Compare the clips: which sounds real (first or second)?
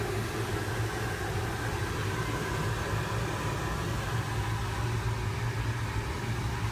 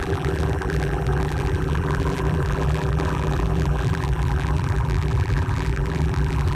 first